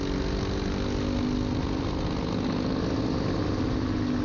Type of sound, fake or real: real